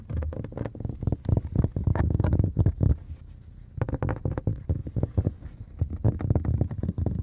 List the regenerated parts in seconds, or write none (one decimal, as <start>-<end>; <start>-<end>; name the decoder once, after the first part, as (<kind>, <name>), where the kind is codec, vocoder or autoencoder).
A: 1.9-2.6 (vocoder, Vocos); 4.8-5.6